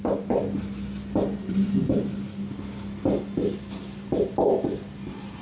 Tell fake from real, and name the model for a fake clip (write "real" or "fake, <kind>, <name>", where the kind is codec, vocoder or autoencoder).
real